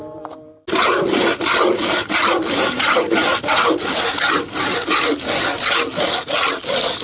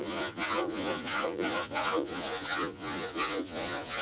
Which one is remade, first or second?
second